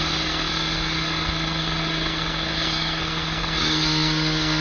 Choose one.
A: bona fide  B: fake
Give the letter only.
B